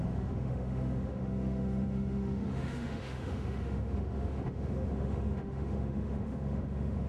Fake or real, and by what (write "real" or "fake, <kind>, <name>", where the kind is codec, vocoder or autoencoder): fake, autoencoder, DAC-VAE